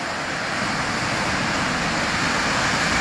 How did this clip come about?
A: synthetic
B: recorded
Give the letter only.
B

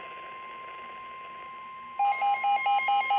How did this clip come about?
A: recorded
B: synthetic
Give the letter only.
A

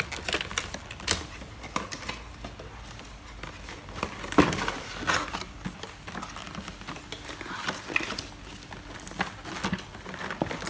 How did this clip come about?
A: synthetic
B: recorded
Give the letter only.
B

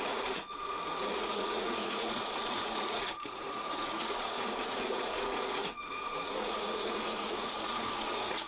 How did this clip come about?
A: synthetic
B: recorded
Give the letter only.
A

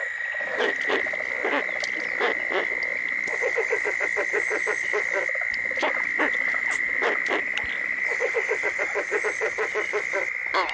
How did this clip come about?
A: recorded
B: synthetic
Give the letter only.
A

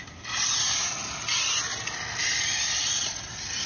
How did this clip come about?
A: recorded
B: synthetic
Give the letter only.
A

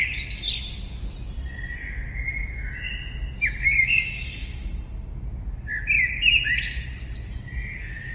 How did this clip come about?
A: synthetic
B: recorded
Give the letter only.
B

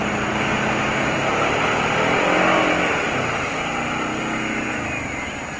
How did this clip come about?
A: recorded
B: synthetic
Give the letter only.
A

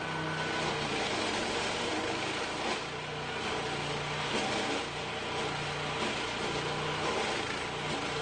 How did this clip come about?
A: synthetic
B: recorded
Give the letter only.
B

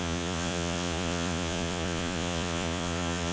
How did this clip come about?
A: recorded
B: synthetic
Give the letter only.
B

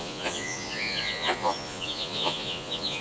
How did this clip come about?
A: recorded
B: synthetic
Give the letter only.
B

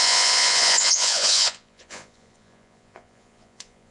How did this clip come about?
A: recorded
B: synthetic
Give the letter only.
B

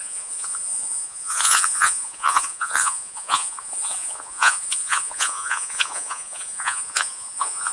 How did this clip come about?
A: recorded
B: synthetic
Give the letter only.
B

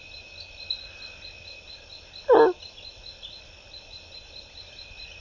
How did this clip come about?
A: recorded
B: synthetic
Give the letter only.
A